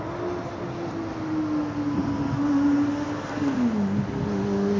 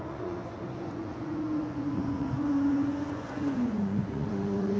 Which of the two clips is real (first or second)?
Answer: first